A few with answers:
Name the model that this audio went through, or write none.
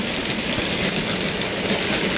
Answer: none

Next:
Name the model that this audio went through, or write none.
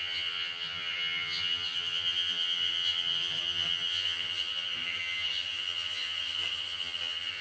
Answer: vocoder, HiFi-GAN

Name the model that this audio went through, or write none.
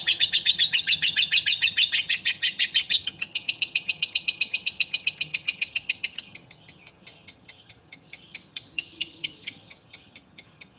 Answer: vocoder, HiFi-GAN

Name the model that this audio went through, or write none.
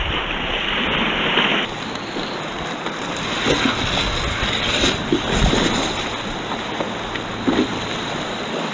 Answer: none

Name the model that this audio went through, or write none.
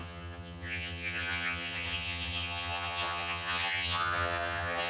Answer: vocoder, HiFi-GAN